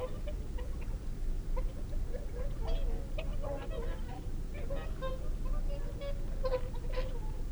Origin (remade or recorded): recorded